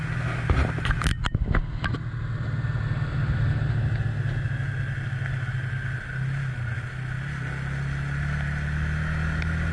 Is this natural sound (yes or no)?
yes